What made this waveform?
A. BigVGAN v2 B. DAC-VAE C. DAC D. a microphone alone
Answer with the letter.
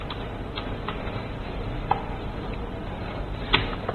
D